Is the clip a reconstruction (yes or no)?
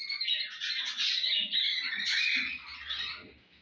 no